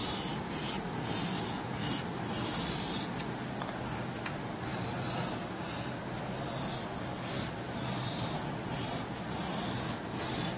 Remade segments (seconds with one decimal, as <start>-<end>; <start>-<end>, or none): 4.7-7.6